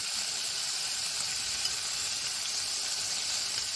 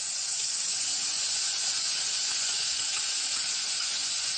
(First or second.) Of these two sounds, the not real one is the second